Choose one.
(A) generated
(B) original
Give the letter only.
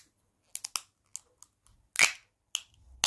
B